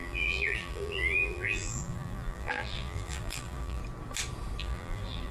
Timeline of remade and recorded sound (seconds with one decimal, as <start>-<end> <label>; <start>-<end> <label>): 0.0-3.8 remade; 3.8-4.6 recorded; 4.6-5.3 remade